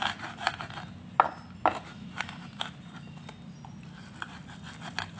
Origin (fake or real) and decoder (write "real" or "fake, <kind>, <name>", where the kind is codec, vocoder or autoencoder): real